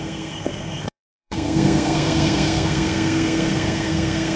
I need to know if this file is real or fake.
fake